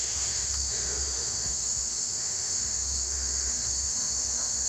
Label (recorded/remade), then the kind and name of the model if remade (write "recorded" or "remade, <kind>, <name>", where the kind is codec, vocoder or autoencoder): remade, autoencoder, DAC-VAE